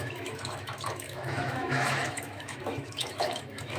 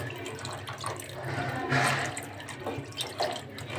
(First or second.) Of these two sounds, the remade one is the first